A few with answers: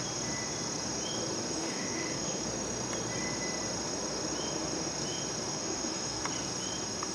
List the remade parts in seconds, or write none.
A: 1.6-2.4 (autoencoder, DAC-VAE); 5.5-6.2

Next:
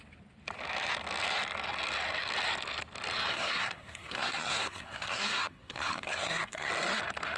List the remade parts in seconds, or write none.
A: 3.3-6.7 (codec, SNAC)

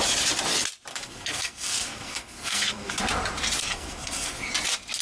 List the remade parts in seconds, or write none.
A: 0.9-3.0 (codec, SNAC); 3.6-4.5

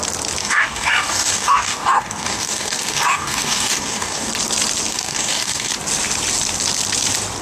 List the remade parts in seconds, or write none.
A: 0.4-4.3 (codec, DAC); 4.9-5.7

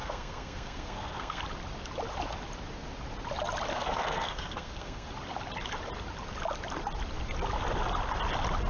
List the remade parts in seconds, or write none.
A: 0.0-1.4 (codec, SNAC); 3.7-5.1

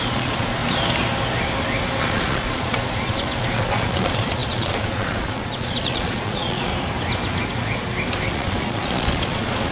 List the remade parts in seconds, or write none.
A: 0.0-0.6 (vocoder, Vocos); 2.0-6.7; 8.3-9.7

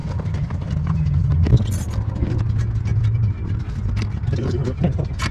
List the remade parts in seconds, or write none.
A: 0.0-2.4 (vocoder, BigVGAN v2); 2.9-4.5